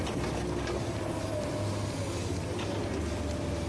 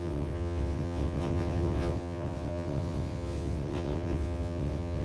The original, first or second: first